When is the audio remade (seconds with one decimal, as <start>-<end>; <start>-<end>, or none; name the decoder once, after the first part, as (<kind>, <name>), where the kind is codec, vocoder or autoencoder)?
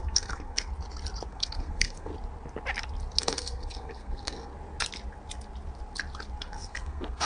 0.0-0.7 (codec, SNAC); 1.3-2.1; 3.2-4.5; 6.4-7.3